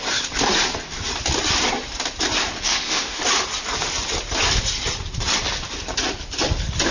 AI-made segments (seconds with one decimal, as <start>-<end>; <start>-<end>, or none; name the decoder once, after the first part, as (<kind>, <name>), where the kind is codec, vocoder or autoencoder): 2.7-3.2 (autoencoder, DAC-VAE)